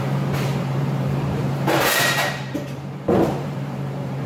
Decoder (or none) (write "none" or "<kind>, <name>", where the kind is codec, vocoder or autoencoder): vocoder, BigVGAN v2